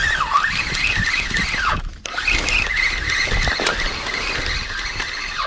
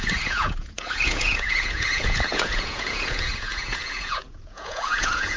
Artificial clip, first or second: second